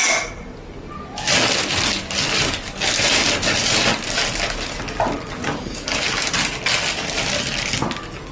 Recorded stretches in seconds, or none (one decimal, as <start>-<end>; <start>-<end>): 0.0-8.3